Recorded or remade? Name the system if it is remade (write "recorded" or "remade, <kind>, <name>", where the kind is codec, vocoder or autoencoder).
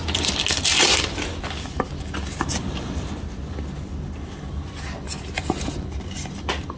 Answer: recorded